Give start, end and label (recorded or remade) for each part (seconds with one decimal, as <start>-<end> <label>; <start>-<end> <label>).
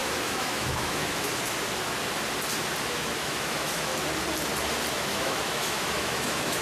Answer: 0.0-1.3 remade; 1.3-2.9 recorded; 2.9-3.9 remade; 3.9-4.9 recorded; 4.9-6.6 remade